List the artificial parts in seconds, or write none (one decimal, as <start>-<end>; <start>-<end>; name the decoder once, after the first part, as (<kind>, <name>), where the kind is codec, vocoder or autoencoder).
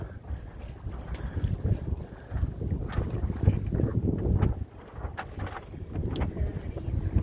none